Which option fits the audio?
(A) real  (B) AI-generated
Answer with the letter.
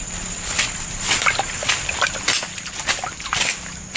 A